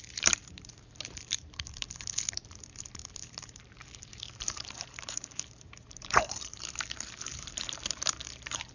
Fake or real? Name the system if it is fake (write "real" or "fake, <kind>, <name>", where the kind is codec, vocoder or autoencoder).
fake, vocoder, BigVGAN v2